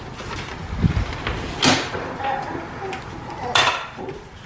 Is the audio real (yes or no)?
yes